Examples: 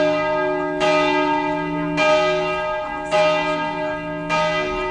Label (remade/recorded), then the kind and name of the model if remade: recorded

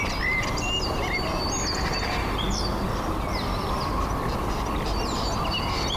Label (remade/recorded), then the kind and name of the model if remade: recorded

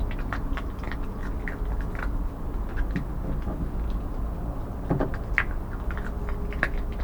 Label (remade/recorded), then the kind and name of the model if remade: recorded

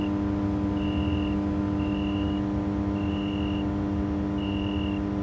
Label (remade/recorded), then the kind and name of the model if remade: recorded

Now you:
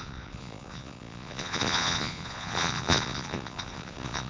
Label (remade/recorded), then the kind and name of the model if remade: remade, vocoder, Vocos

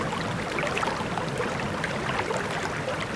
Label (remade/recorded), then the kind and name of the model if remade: recorded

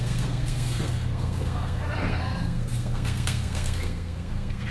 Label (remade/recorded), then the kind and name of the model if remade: remade, codec, SNAC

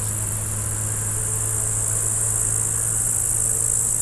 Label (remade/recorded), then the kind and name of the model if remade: recorded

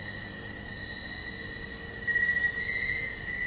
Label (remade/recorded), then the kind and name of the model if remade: recorded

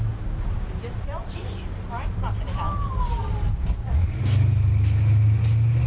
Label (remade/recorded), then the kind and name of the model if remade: recorded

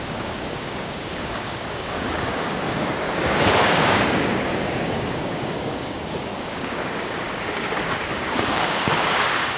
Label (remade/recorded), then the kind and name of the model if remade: remade, codec, DAC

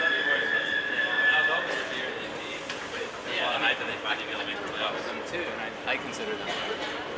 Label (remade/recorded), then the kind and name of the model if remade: recorded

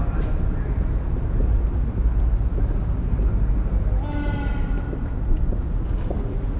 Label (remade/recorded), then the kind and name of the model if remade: recorded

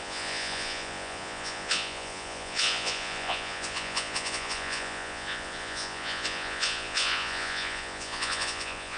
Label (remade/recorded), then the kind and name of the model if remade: remade, vocoder, Vocos